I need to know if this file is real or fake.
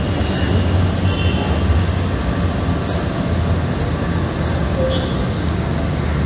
real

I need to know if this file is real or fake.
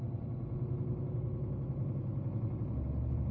real